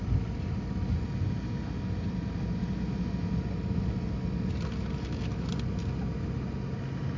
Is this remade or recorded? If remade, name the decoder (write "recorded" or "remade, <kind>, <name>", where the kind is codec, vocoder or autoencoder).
recorded